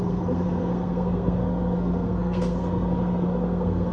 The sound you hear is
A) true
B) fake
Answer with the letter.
B